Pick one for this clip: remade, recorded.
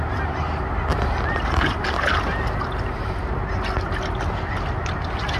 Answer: recorded